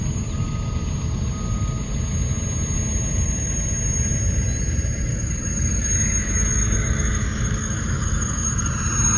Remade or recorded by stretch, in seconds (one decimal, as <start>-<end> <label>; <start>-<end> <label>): 0.0-5.1 recorded; 5.1-8.7 remade; 8.7-9.2 recorded